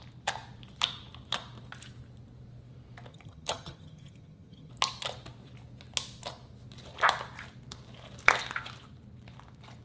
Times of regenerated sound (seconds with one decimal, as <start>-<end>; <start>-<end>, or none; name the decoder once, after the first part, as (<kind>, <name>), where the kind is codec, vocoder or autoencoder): 3.1-4.7 (vocoder, HiFi-GAN)